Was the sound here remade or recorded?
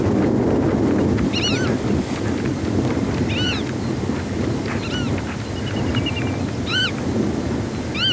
recorded